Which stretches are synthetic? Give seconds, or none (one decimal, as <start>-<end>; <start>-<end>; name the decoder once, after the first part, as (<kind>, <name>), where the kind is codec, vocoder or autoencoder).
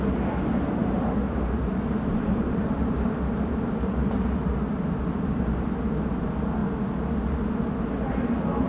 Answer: 0.8-4.3 (vocoder, BigVGAN v2)